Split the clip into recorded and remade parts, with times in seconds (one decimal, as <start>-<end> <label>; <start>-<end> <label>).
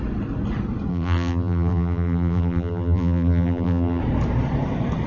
0.0-0.9 recorded; 0.9-4.0 remade; 4.0-5.1 recorded